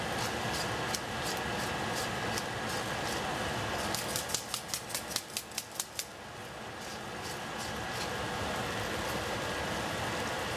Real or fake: real